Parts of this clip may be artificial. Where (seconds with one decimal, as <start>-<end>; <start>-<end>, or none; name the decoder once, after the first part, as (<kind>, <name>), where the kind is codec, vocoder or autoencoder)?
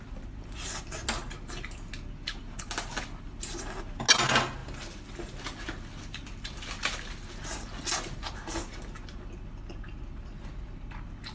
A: none